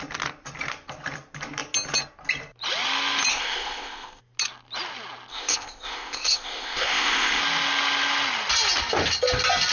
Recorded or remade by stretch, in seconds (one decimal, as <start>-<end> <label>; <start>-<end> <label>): 0.0-3.3 recorded; 3.3-4.2 remade; 4.2-5.3 recorded; 5.3-7.4 remade; 7.4-9.7 recorded